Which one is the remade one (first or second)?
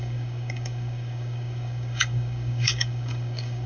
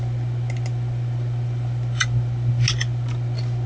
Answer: first